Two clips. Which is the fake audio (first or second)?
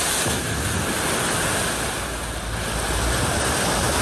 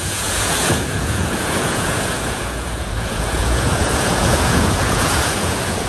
second